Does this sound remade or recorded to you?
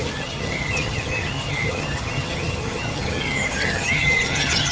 remade